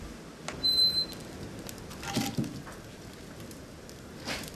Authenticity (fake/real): real